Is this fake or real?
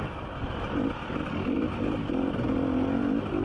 real